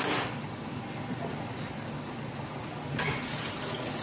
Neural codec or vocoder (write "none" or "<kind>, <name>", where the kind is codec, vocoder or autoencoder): none